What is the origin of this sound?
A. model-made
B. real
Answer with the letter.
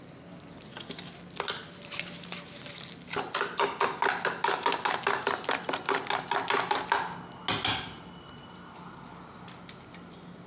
B